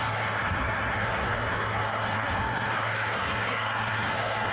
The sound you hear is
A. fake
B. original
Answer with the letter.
A